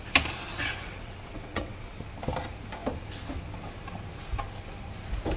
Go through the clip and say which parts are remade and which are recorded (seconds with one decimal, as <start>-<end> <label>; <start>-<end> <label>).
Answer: 0.0-0.8 recorded; 0.8-2.0 remade; 2.0-5.4 recorded